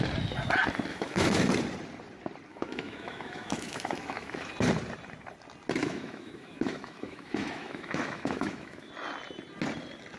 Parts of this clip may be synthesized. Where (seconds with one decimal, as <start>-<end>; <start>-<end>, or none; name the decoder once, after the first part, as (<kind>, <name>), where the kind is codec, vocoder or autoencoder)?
0.9-1.5 (autoencoder, DAC-VAE); 2.5-4.5; 5.8-8.9